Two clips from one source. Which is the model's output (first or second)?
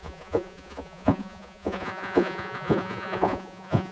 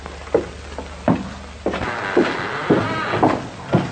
first